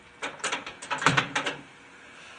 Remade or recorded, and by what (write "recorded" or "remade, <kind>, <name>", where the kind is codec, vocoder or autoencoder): recorded